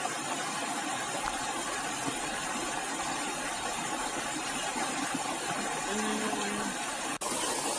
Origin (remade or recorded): recorded